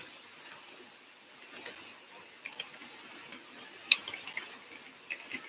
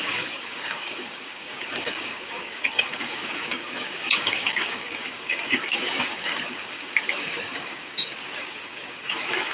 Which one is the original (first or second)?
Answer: first